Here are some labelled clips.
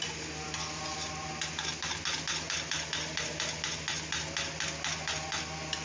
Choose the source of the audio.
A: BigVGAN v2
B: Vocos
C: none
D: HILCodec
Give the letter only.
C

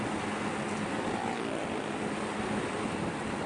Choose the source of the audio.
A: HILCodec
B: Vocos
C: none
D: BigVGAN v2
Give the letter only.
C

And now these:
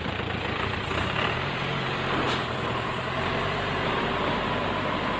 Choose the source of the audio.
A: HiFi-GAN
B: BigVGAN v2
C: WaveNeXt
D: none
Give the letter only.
B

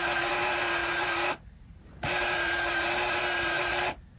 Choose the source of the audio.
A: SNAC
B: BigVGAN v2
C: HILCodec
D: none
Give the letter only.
B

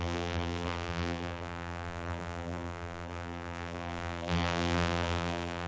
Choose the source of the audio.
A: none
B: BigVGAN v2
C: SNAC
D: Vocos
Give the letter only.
B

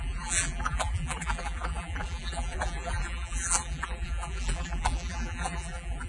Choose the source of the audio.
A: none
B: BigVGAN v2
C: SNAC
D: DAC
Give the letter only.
B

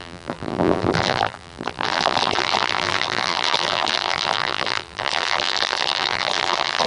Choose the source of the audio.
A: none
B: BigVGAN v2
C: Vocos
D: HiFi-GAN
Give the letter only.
B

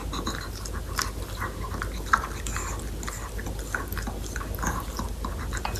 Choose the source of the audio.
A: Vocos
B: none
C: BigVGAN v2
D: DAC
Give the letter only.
B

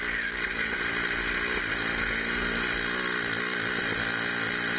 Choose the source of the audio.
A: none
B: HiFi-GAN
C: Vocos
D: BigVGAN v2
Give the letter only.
A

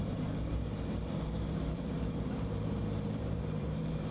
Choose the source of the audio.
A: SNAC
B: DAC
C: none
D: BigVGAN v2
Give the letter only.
D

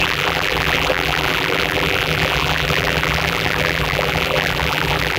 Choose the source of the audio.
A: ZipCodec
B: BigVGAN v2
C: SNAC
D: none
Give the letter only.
B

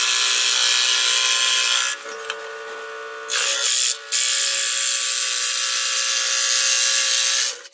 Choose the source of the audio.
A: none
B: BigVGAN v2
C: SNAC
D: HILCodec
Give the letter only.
A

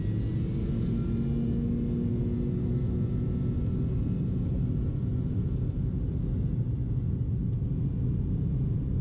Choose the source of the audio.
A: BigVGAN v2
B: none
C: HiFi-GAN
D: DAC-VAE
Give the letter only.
B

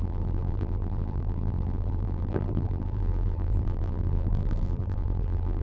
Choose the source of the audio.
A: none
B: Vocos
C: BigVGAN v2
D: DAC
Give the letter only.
C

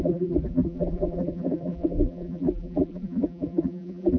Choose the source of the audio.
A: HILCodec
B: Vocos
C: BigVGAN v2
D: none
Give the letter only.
C